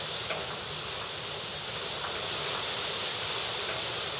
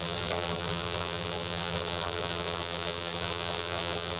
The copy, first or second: second